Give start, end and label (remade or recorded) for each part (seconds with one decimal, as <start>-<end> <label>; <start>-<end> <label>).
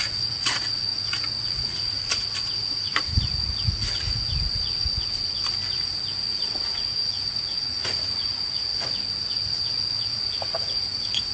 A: 0.0-0.9 remade; 0.9-1.5 recorded; 1.5-2.4 remade; 2.4-6.2 recorded; 6.2-8.7 remade; 8.7-10.2 recorded; 10.2-11.3 remade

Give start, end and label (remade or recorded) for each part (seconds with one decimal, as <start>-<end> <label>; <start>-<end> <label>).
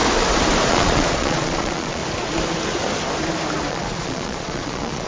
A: 0.0-0.7 recorded; 0.7-2.0 remade; 2.0-3.7 recorded; 3.7-5.1 remade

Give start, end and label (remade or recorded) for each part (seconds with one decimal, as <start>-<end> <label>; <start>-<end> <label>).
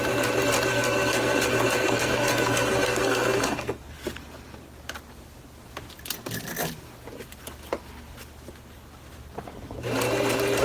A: 0.0-0.7 recorded; 0.7-3.8 remade; 3.8-10.6 recorded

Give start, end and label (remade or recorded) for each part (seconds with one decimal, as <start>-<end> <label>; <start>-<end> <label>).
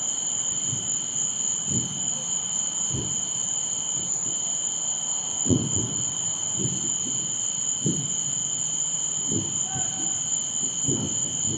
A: 0.0-5.3 recorded; 5.3-6.1 remade; 6.1-11.6 recorded